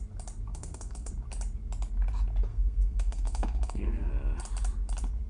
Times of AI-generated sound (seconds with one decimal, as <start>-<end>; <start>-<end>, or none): 0.5-1.1; 2.5-4.1